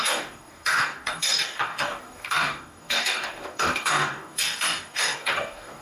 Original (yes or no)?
no